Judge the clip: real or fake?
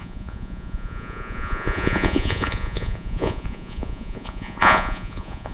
fake